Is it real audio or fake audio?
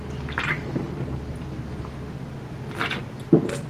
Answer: real